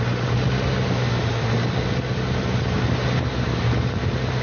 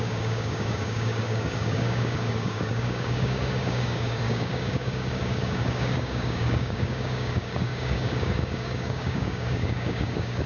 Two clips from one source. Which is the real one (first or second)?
first